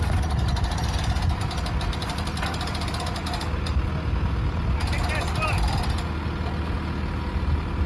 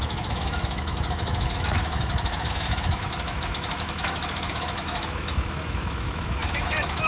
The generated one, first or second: second